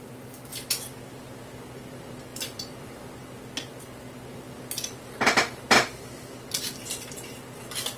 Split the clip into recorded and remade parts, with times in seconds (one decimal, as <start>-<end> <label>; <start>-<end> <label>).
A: 0.0-0.5 recorded; 0.5-1.0 remade; 1.0-8.0 recorded